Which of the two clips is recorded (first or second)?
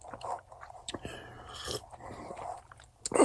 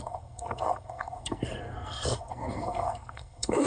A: first